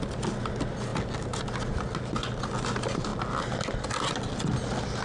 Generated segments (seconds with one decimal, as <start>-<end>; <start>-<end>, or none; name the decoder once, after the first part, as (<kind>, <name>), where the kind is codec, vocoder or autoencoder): none